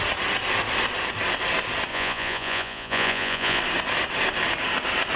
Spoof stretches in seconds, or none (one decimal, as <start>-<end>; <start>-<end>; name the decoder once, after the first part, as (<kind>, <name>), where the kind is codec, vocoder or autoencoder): 1.9-3.6 (vocoder, Vocos)